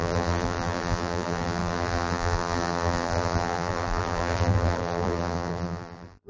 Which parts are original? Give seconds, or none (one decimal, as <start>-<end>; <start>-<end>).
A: none